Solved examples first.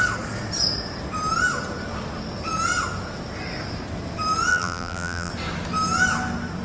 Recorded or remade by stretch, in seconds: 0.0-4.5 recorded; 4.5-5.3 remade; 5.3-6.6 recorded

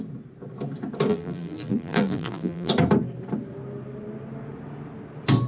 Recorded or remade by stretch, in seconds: 0.0-1.1 recorded; 1.1-2.7 remade; 2.7-5.5 recorded

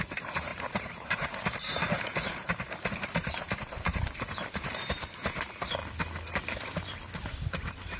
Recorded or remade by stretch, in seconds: 0.0-5.8 remade; 5.8-8.0 recorded